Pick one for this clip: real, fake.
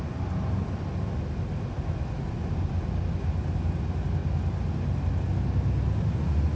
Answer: real